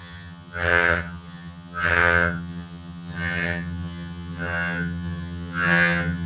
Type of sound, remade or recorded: remade